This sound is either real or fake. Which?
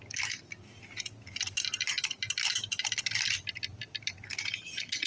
real